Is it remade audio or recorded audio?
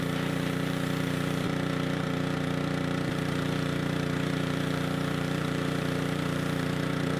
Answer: remade